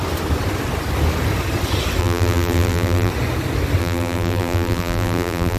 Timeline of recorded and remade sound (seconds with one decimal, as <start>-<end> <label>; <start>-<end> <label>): 0.0-2.0 recorded; 2.0-3.1 remade; 3.1-3.8 recorded; 3.8-5.6 remade